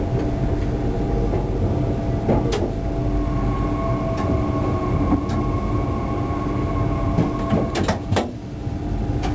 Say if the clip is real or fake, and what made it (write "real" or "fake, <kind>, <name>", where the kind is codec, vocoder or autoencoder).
real